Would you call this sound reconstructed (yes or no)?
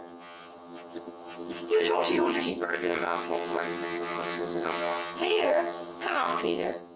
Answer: yes